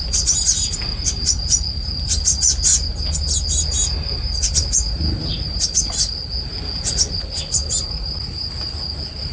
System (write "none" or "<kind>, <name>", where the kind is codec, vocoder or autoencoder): none